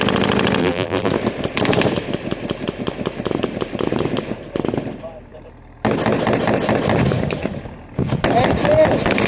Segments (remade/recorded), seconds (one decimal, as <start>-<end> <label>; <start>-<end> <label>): 0.0-0.6 recorded; 0.6-1.1 remade; 1.1-9.3 recorded